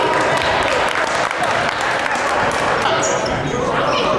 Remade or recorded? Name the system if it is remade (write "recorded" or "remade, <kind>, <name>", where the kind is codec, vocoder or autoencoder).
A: recorded